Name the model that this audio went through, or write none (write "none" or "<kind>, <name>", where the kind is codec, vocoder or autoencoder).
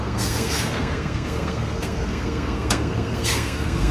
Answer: codec, SNAC